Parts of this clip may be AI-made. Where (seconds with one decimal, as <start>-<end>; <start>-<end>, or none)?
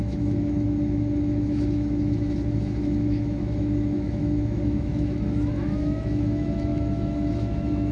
0.0-7.9